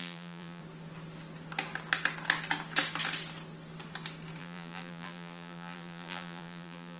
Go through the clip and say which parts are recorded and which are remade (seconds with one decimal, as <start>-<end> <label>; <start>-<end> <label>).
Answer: 0.0-0.6 remade; 0.6-4.4 recorded; 4.4-7.0 remade